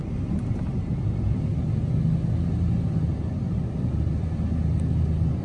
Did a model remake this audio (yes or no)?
no